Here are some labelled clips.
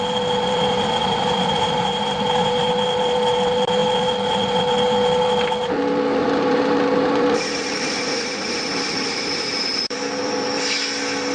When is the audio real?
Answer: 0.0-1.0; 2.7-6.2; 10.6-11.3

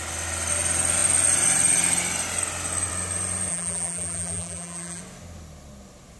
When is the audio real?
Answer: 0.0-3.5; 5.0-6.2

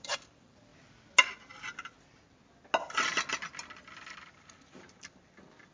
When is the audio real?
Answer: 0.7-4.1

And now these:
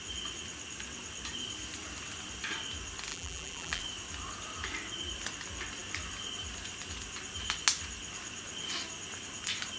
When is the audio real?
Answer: 0.0-3.1; 3.8-9.8